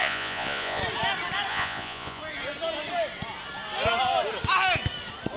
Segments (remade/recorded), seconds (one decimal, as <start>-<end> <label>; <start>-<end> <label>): 0.0-0.8 remade; 0.8-1.5 recorded; 1.5-2.2 remade; 2.2-5.4 recorded